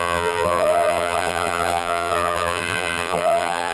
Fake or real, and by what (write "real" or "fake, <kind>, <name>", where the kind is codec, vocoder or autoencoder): fake, vocoder, BigVGAN v2